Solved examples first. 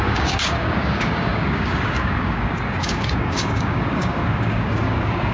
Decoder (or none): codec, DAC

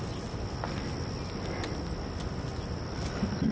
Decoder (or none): none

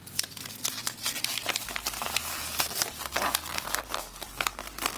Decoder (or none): none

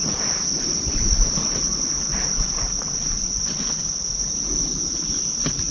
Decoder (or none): vocoder, BigVGAN v2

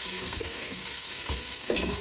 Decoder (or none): codec, SNAC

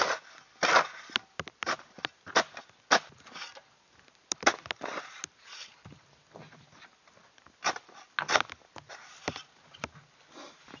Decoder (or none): none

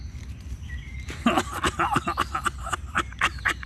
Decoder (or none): none